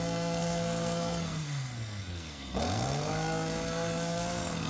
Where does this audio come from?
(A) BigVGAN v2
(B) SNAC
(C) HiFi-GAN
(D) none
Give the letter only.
B